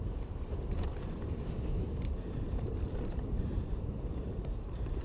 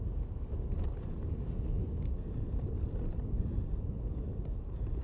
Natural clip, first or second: second